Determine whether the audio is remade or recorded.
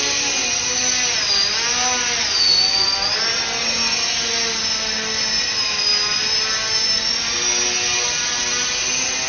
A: recorded